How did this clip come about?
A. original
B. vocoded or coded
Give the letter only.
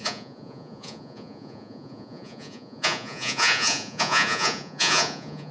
B